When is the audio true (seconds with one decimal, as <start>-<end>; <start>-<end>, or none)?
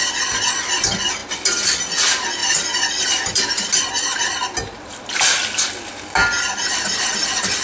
0.0-1.2; 1.8-2.4; 3.9-7.6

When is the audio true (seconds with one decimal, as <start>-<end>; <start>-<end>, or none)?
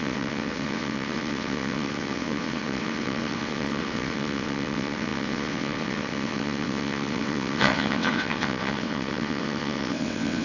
none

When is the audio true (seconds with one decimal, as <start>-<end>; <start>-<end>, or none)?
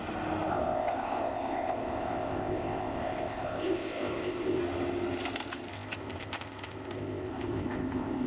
0.0-0.5; 4.6-5.7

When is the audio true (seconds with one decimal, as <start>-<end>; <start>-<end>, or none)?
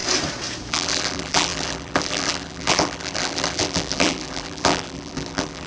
0.0-0.7